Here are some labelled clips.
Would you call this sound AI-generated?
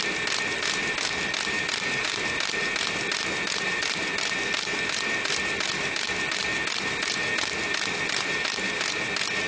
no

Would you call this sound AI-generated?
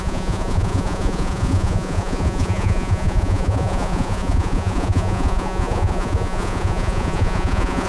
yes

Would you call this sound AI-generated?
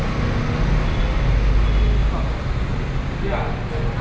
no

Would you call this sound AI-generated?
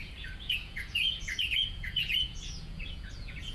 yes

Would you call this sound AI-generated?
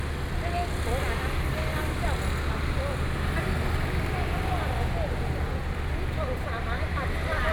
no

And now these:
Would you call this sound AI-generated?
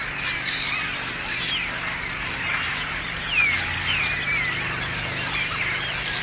no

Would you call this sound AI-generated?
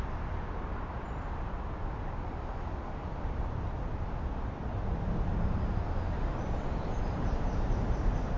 no